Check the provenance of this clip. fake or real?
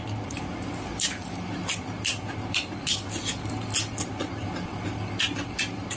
real